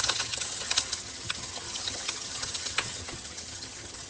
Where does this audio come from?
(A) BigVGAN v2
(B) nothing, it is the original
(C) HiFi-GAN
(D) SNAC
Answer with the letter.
C